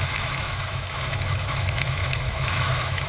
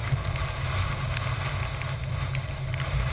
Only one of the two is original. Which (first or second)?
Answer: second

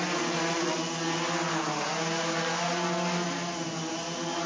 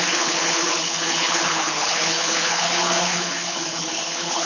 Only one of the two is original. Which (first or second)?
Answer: first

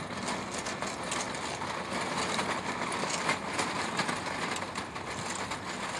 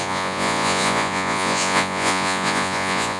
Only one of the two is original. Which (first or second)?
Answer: first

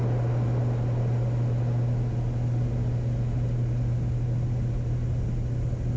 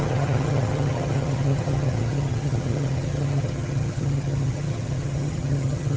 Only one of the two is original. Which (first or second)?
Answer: first